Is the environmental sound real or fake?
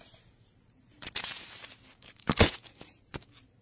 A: fake